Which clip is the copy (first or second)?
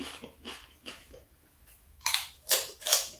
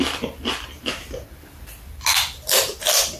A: first